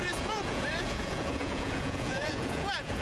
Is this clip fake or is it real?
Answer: fake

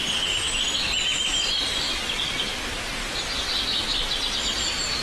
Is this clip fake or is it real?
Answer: real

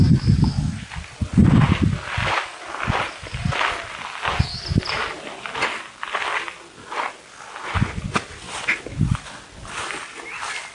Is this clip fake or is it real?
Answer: real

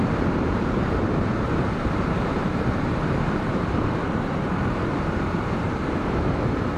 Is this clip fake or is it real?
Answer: fake